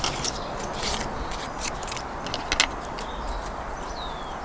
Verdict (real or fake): real